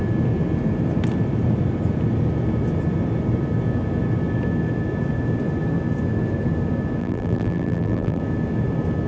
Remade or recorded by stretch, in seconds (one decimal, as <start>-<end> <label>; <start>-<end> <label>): 0.0-7.0 recorded; 7.0-8.2 remade; 8.2-9.1 recorded